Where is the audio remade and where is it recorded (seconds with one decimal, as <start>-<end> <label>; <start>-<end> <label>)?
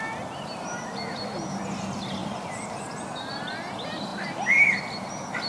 0.0-2.2 recorded; 2.2-2.8 remade; 2.8-4.1 recorded; 4.1-4.8 remade; 4.8-5.5 recorded